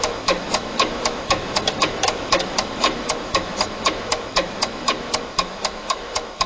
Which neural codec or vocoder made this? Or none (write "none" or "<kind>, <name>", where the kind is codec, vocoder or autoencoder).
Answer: autoencoder, DAC-VAE